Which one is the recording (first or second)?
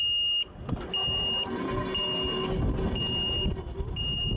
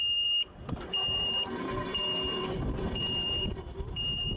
first